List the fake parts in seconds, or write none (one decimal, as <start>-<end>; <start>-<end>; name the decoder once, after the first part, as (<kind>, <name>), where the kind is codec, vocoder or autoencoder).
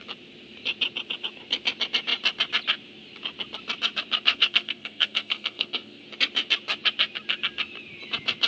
4.3-6.0 (codec, SNAC)